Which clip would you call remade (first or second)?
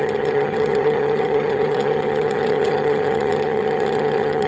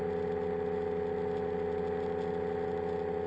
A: first